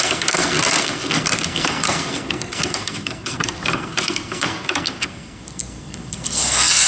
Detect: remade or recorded remade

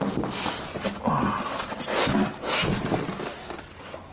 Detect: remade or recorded recorded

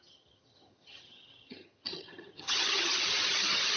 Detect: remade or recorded remade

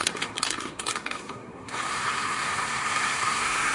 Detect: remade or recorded remade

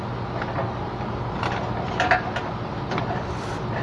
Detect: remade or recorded recorded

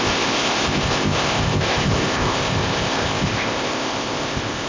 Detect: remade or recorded remade